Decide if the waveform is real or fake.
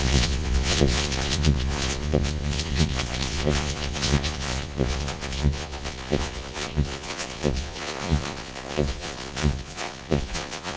fake